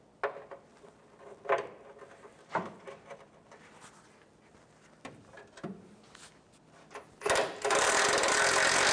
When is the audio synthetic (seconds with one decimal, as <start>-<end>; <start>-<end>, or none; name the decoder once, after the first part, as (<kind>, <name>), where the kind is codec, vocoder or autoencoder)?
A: 0.7-4.0 (vocoder, BigVGAN v2)